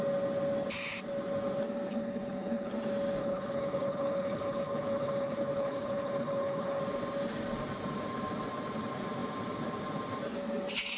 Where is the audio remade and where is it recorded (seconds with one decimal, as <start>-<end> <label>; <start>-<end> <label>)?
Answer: 0.0-1.9 recorded; 1.9-2.7 remade; 2.7-3.2 recorded; 3.2-6.8 remade; 6.8-11.0 recorded